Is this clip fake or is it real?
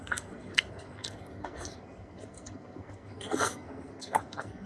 fake